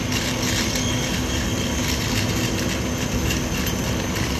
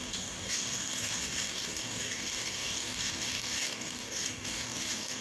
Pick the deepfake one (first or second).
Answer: second